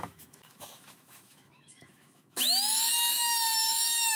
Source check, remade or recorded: remade